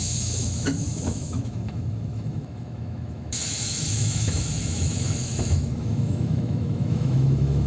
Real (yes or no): no